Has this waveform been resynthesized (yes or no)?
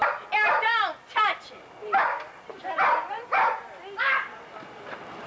no